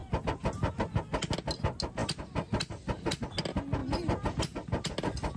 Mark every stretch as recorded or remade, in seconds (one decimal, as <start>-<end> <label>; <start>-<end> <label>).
0.0-5.4 recorded

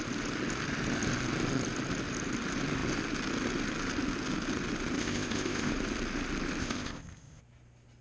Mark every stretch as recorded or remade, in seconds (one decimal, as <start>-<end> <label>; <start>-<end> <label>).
0.0-5.0 recorded; 5.0-5.7 remade; 5.7-6.6 recorded; 6.6-7.4 remade; 7.4-8.0 recorded